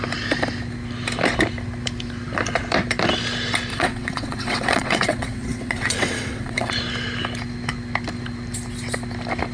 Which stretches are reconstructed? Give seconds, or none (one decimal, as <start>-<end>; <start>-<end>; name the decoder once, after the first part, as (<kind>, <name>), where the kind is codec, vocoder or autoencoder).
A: 3.7-6.7 (vocoder, WaveNeXt)